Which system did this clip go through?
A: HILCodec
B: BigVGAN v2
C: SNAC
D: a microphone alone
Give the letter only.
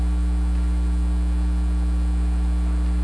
D